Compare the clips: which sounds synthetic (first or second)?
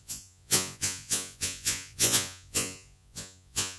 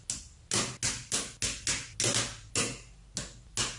first